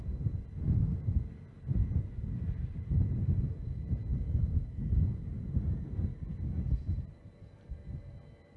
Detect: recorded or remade recorded